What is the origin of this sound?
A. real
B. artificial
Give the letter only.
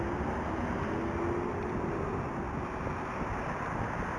A